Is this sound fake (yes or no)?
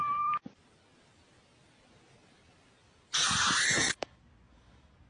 no